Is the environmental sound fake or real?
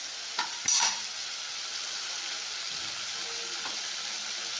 real